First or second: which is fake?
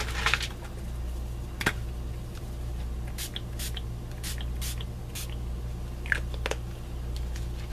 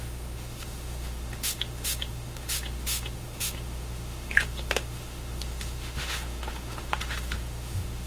second